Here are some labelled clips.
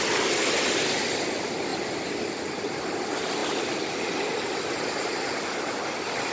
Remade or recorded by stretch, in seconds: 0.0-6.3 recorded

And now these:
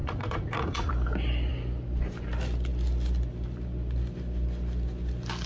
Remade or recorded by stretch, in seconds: 0.0-0.9 remade; 0.9-5.5 recorded

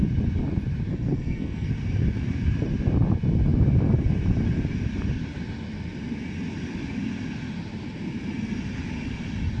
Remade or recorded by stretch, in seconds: 0.0-0.9 recorded; 0.9-1.7 remade; 1.7-9.6 recorded

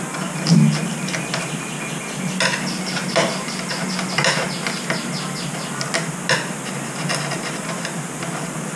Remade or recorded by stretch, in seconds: 0.0-8.8 recorded

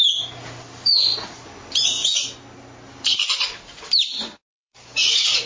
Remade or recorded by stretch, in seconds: 0.0-4.5 recorded; 4.5-5.1 remade; 5.1-5.5 recorded

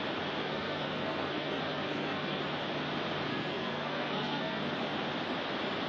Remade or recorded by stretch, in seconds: 0.0-0.4 recorded; 0.4-2.4 remade; 2.4-3.3 recorded; 3.3-4.6 remade; 4.6-5.9 recorded